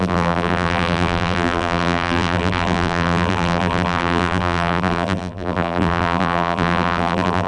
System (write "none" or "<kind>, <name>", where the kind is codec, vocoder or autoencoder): vocoder, BigVGAN v2